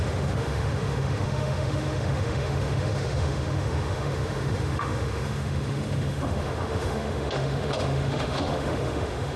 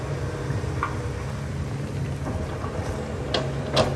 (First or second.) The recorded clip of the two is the second